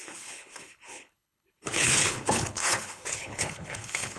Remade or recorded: remade